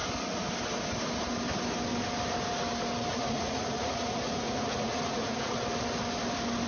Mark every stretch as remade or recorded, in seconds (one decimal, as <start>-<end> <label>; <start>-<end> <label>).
0.0-3.1 recorded; 3.1-5.6 remade; 5.6-6.7 recorded